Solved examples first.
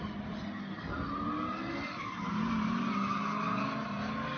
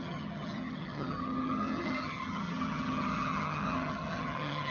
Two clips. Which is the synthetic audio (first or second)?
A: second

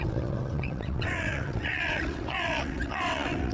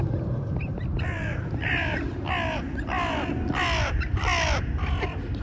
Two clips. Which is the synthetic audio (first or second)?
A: first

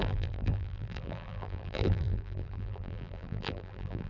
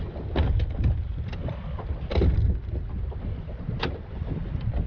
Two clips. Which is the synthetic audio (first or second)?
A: first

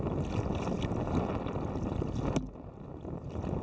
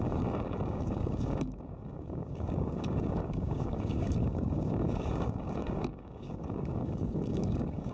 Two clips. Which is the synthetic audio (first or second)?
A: second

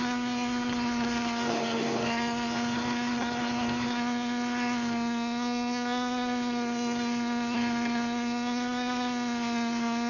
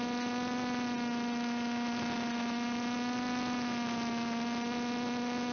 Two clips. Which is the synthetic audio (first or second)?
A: first